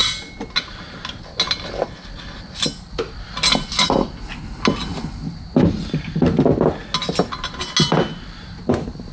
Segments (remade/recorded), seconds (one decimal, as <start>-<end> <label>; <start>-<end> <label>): 0.0-9.1 recorded